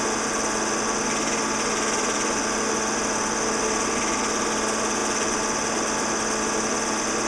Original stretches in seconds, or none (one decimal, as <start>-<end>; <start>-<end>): 0.0-7.3